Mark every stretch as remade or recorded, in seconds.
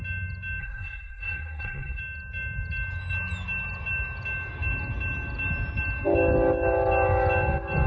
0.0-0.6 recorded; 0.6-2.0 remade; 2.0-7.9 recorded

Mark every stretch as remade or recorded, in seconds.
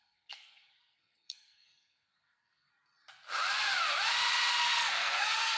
0.0-2.7 remade; 2.7-4.6 recorded; 4.6-5.6 remade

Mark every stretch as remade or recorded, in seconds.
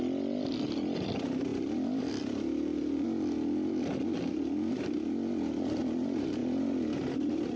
0.0-7.6 recorded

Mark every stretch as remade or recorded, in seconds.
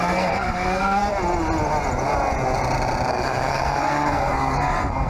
0.0-1.0 remade; 1.0-3.1 recorded; 3.1-5.1 remade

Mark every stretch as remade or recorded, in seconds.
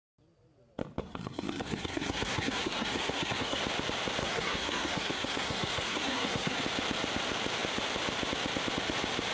0.0-1.0 recorded; 1.0-3.6 remade; 3.6-4.2 recorded; 4.2-6.6 remade; 6.6-9.3 recorded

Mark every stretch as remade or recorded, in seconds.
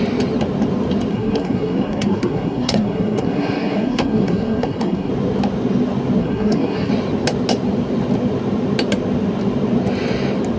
0.0-1.1 recorded; 1.1-5.1 remade; 5.1-6.2 recorded; 6.2-6.9 remade; 6.9-10.6 recorded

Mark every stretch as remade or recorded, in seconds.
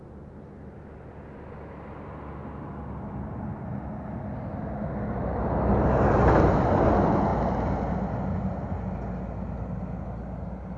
0.0-10.8 recorded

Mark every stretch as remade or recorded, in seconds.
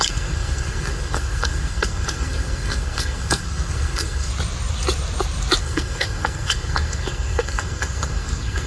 0.0-4.3 remade; 4.3-5.6 recorded; 5.6-8.7 remade